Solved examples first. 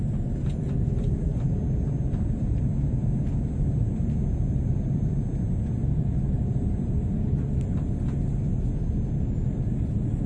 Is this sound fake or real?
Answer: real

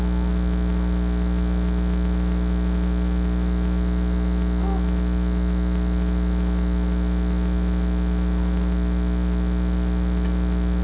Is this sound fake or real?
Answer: real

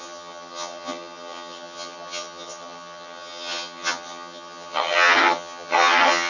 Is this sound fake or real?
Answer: fake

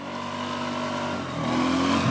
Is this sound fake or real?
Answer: real